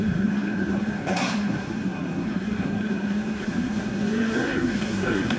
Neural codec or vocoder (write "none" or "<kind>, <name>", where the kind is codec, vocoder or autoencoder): codec, SNAC